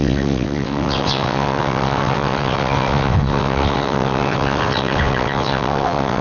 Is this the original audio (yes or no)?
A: no